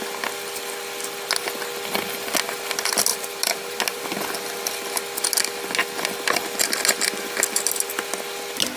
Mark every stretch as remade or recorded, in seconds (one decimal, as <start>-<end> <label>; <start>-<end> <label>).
0.0-3.1 recorded; 3.1-4.0 remade; 4.0-8.8 recorded